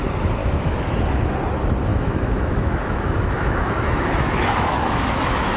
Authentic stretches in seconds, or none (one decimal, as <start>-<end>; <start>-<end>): 0.0-0.4; 0.9-1.9